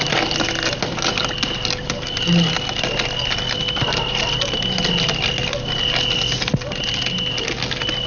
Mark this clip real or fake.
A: real